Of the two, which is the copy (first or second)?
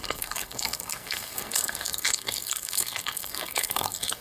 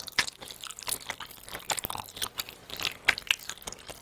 first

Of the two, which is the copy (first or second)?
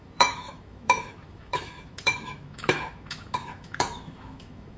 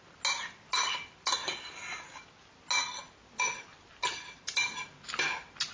first